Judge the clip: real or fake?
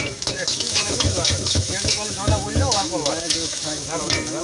fake